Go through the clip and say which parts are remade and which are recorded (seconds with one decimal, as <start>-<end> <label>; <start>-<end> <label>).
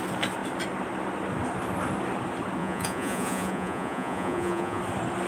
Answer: 0.0-2.6 recorded; 2.6-4.8 remade; 4.8-5.3 recorded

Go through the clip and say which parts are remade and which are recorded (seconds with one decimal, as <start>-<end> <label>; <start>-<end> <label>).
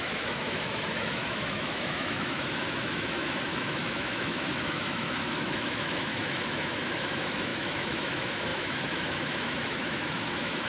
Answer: 0.0-10.7 remade